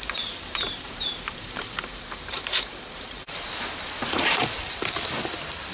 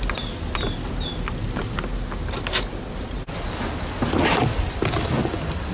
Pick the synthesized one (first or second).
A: first